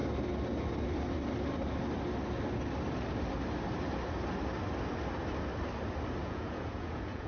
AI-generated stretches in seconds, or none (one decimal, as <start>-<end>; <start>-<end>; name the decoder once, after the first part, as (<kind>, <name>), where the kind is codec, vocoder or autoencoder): 6.2-7.3 (vocoder, Vocos)